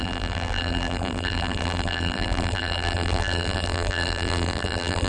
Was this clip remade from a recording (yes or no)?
yes